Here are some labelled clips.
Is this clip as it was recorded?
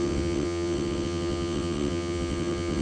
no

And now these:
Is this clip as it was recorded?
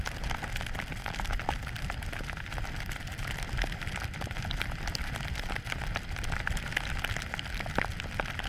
yes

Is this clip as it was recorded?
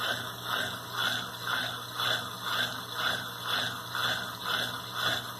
yes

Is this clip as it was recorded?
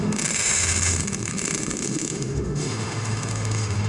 no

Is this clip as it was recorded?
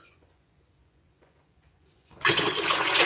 no